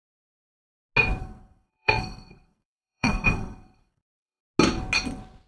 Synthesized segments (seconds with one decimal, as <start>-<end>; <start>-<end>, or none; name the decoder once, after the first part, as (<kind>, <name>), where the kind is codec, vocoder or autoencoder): 1.2-4.4 (codec, SNAC)